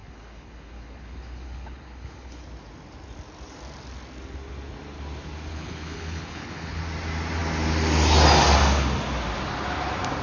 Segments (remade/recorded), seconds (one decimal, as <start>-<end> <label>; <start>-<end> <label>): 0.0-2.4 remade; 2.4-5.5 recorded; 5.5-6.8 remade; 6.8-10.2 recorded

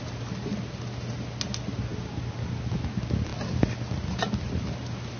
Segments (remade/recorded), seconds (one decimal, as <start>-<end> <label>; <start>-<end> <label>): 0.0-5.2 recorded

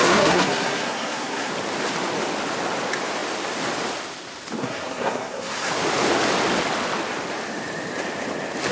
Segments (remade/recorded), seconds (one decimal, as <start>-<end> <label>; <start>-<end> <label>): 0.0-1.5 remade; 1.5-4.6 recorded; 4.6-5.7 remade; 5.7-8.7 recorded

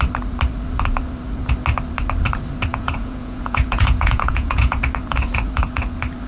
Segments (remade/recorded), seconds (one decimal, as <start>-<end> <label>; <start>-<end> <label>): 0.0-2.7 recorded; 2.7-4.8 remade; 4.8-6.3 recorded

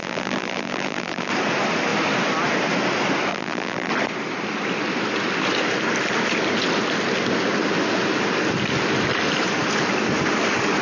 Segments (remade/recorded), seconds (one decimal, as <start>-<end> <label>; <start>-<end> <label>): 0.0-1.3 remade; 1.3-3.3 recorded; 3.3-3.9 remade; 3.9-10.8 recorded